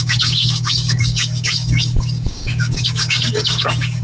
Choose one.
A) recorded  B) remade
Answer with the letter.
B